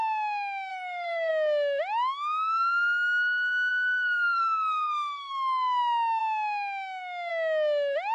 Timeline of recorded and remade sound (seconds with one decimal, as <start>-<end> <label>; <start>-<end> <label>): 0.0-0.7 recorded; 0.7-1.3 remade; 1.3-3.7 recorded; 3.7-5.3 remade; 5.3-8.1 recorded